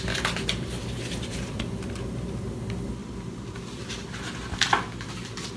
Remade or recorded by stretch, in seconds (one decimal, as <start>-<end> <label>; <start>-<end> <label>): 0.0-5.6 recorded